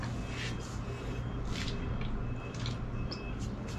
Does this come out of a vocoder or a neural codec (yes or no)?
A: no